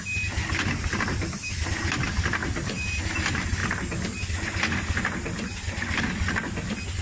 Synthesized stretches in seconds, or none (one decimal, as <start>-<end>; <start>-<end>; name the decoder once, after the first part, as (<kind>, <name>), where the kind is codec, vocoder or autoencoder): 2.4-3.0 (vocoder, BigVGAN v2)